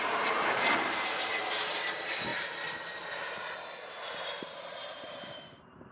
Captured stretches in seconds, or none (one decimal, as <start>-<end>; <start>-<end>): none